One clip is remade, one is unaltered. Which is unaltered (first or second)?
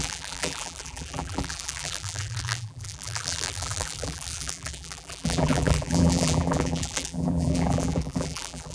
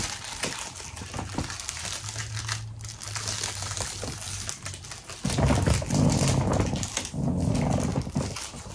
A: second